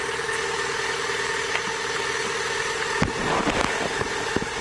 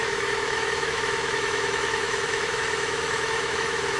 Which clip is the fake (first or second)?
second